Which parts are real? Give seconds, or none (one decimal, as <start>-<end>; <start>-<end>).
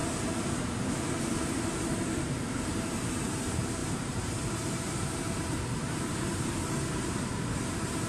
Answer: 0.0-1.0